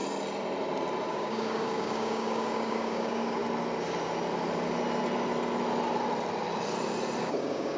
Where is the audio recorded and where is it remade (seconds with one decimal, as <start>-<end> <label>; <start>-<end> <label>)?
0.0-1.1 recorded; 1.1-3.4 remade; 3.4-7.2 recorded; 7.2-7.8 remade